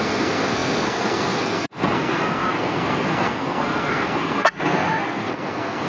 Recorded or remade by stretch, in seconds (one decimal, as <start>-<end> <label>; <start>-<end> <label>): 0.0-5.9 remade